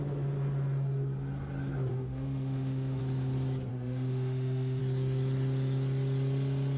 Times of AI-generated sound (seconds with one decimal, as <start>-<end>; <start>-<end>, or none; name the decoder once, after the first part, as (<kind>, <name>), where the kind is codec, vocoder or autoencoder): 1.9-3.0 (autoencoder, DAC-VAE); 3.7-4.8